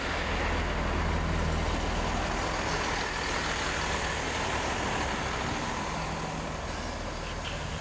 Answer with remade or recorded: recorded